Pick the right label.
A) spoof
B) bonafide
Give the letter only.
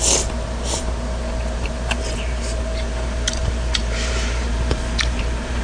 A